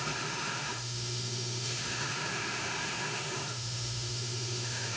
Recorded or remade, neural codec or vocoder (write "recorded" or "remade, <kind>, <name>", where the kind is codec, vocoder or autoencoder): remade, autoencoder, DAC-VAE